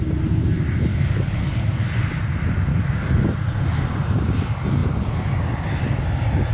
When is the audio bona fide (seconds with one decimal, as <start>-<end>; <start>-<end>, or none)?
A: 0.0-0.9; 1.6-2.7; 3.2-6.5